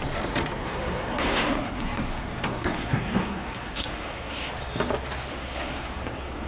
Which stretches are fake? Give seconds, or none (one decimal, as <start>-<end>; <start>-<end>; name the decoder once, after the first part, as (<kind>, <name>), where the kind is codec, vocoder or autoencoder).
0.6-4.5 (codec, SNAC); 5.3-6.5